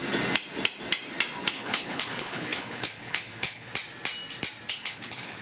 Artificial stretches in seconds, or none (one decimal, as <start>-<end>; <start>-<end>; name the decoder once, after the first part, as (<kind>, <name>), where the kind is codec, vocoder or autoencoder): 1.5-3.7 (codec, HILCodec); 4.7-5.4